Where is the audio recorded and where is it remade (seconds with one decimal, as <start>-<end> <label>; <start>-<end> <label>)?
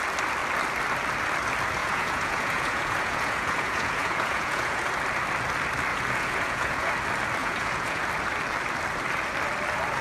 0.0-1.8 recorded; 1.8-4.9 remade; 4.9-5.9 recorded; 5.9-6.9 remade; 6.9-7.4 recorded; 7.4-8.0 remade; 8.0-10.0 recorded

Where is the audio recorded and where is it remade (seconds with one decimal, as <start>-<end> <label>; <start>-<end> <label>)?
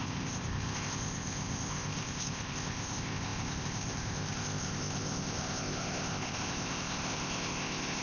0.0-8.0 remade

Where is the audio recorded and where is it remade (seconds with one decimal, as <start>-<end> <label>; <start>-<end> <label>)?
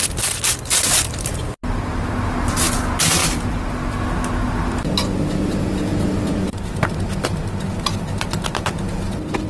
0.0-3.2 recorded; 3.2-4.0 remade; 4.0-9.5 recorded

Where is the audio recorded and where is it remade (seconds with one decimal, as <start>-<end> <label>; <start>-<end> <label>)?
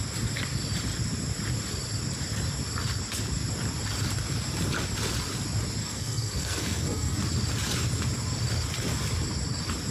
0.0-5.8 recorded; 5.8-7.2 remade; 7.2-9.9 recorded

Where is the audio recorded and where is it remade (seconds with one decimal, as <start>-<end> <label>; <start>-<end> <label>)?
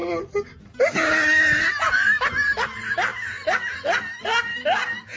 0.0-5.2 recorded